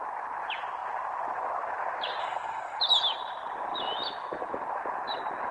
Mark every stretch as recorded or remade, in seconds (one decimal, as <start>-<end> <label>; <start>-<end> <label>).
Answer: 0.0-2.2 recorded; 2.2-2.8 remade; 2.8-5.5 recorded